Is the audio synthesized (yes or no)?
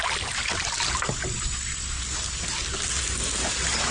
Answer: no